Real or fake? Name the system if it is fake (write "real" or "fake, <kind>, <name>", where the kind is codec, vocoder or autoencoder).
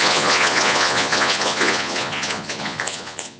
fake, vocoder, Vocos